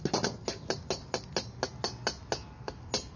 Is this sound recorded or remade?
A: recorded